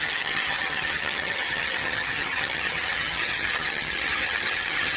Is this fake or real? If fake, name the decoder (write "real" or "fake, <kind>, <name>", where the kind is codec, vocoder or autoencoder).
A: fake, vocoder, HiFi-GAN